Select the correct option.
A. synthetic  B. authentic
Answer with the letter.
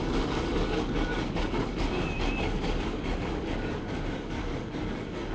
A